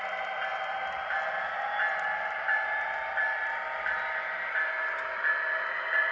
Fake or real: real